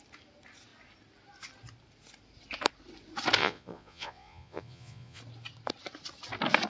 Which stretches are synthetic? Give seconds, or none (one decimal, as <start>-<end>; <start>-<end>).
3.4-5.2